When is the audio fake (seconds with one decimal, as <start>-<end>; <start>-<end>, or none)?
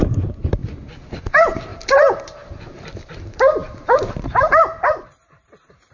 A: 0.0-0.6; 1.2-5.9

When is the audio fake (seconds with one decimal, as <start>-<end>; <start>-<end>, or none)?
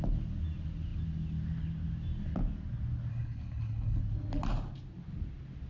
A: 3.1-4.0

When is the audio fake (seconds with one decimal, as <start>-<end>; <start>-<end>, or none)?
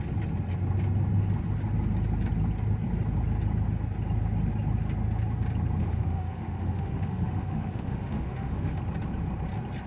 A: 5.8-8.8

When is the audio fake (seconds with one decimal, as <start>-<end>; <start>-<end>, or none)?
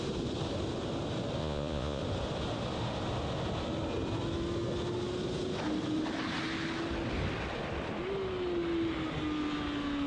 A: 1.4-2.0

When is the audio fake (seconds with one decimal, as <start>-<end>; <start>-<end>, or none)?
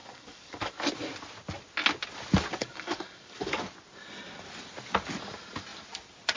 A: 0.0-0.7; 2.5-3.6